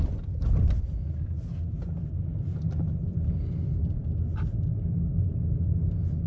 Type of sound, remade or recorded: recorded